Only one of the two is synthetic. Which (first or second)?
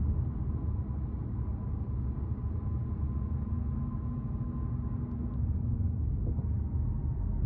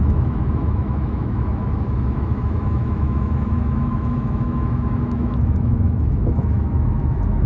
second